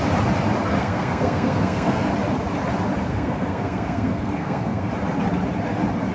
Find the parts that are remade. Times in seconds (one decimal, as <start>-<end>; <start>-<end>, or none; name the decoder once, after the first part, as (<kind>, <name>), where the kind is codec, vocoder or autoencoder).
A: 0.8-2.1 (codec, SNAC); 3.1-4.9